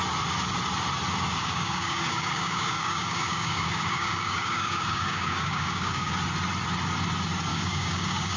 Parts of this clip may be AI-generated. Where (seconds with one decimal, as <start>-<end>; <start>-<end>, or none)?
1.4-6.1; 7.5-8.4